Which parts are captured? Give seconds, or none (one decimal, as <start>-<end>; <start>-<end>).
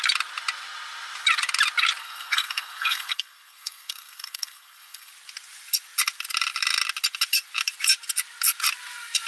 0.0-2.0; 5.1-9.3